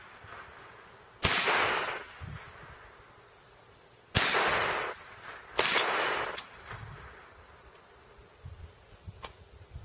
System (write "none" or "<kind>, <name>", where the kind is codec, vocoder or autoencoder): none